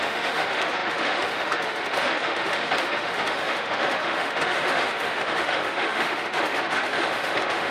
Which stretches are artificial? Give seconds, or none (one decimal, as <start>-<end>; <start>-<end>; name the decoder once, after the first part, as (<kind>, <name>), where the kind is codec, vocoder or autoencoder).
0.0-7.7 (autoencoder, DAC-VAE)